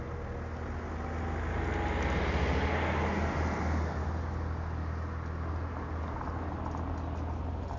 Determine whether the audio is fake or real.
real